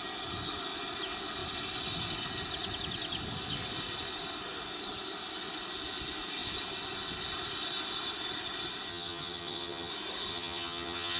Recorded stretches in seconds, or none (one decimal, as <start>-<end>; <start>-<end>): 0.0-8.9; 9.9-10.3